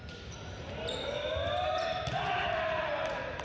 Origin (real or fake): real